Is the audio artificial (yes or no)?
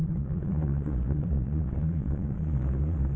yes